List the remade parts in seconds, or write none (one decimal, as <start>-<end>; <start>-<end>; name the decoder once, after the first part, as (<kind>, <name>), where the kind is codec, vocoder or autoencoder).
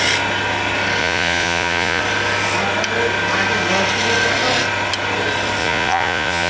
1.0-2.0 (vocoder, Vocos); 5.6-6.5